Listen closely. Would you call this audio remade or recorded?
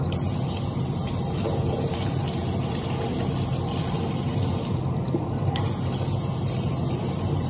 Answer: recorded